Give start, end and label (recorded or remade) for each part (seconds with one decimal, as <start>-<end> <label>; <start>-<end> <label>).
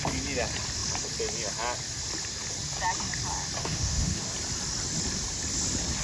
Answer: 0.0-3.6 recorded; 3.6-4.3 remade; 4.3-6.0 recorded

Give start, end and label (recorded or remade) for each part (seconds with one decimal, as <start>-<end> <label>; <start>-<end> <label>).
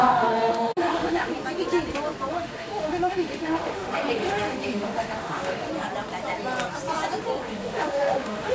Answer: 0.0-1.3 remade; 1.3-2.3 recorded; 2.3-5.7 remade; 5.7-7.4 recorded; 7.4-8.5 remade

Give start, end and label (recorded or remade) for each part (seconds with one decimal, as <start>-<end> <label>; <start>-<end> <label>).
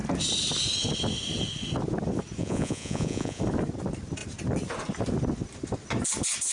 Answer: 0.0-2.4 recorded; 2.4-3.4 remade; 3.4-6.5 recorded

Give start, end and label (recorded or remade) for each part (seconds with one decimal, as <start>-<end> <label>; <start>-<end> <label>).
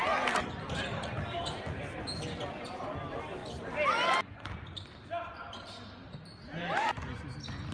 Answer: 0.0-7.7 recorded